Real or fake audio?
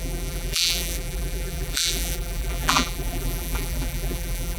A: fake